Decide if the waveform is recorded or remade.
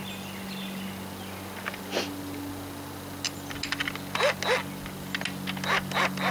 recorded